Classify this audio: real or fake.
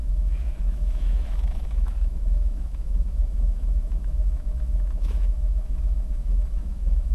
fake